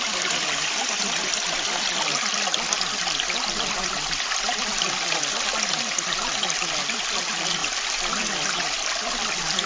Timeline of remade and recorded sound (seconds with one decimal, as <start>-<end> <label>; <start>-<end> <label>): 0.0-9.7 recorded